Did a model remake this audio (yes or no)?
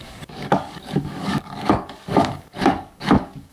yes